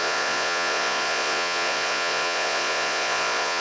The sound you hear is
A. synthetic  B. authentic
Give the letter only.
A